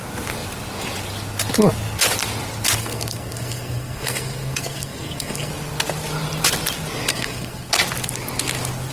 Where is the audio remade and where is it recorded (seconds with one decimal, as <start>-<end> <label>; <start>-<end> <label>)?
0.0-2.8 recorded; 2.8-5.5 remade; 5.5-7.1 recorded; 7.1-7.7 remade; 7.7-8.9 recorded